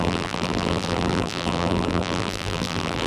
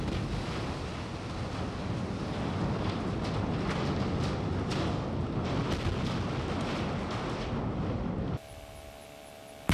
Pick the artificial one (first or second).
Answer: first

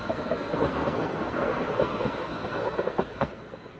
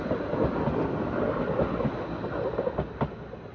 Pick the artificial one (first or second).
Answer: first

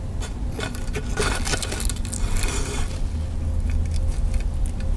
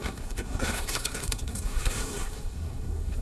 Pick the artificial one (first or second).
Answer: second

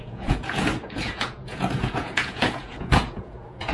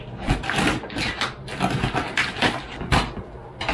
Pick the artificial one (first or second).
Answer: first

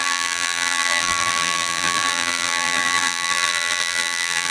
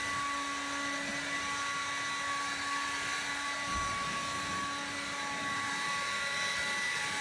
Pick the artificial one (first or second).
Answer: first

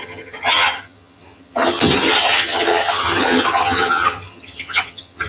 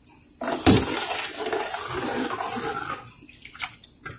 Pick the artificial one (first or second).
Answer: first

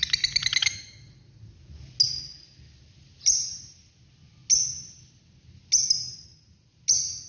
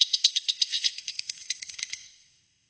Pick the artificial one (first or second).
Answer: second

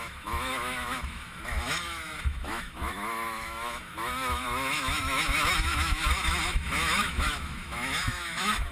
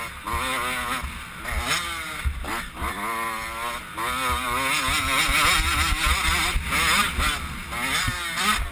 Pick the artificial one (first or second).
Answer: first